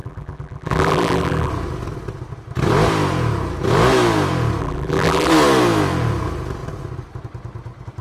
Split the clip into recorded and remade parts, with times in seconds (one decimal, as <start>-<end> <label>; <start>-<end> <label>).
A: 0.0-1.5 remade; 1.5-4.6 recorded; 4.6-5.3 remade; 5.3-8.0 recorded